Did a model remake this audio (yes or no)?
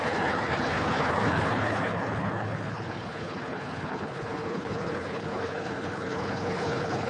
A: yes